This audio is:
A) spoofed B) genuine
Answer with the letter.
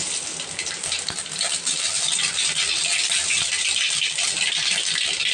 B